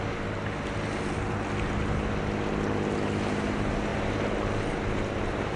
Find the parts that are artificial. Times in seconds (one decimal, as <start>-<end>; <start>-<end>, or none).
none